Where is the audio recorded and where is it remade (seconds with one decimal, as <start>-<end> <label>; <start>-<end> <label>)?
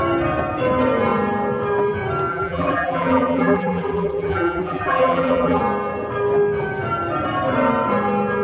0.0-2.3 recorded; 2.3-5.6 remade; 5.6-8.4 recorded